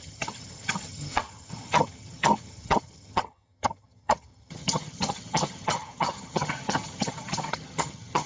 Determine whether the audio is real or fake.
fake